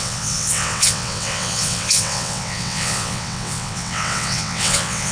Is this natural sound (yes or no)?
no